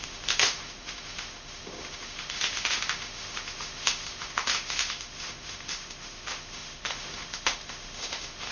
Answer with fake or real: fake